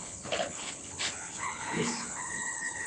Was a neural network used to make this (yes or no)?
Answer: yes